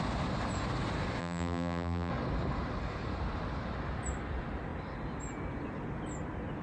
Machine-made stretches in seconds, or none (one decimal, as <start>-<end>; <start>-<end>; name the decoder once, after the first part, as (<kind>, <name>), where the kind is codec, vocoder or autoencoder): 1.2-2.1 (vocoder, BigVGAN v2)